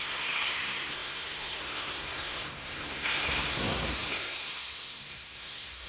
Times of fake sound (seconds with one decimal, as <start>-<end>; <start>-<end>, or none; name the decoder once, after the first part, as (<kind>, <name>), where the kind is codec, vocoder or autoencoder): 0.0-5.9 (codec, SNAC)